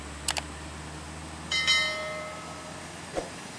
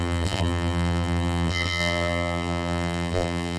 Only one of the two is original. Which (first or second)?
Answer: first